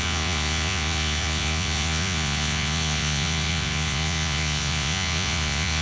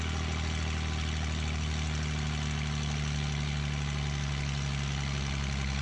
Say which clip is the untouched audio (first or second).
second